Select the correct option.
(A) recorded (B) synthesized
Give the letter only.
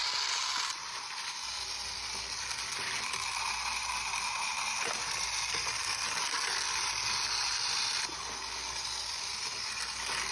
A